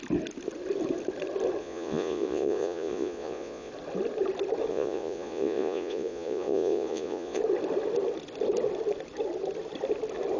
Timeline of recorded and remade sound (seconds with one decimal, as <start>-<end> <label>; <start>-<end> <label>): 0.0-1.6 recorded; 1.6-3.7 remade; 3.7-4.7 recorded; 4.7-7.4 remade; 7.4-10.4 recorded